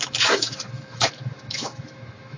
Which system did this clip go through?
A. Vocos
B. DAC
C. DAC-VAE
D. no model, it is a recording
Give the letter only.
C